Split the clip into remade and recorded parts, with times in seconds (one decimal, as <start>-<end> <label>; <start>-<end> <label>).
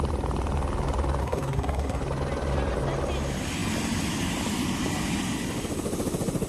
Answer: 0.0-1.2 recorded; 1.2-2.0 remade; 2.0-6.5 recorded